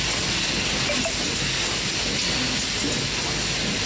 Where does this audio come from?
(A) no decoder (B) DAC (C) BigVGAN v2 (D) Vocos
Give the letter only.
A